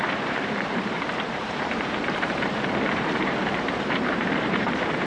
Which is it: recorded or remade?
remade